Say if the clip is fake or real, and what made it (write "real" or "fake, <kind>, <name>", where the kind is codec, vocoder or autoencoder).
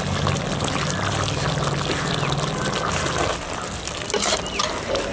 real